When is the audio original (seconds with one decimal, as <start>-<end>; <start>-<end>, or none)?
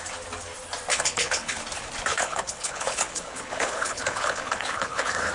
0.0-0.9; 1.6-2.1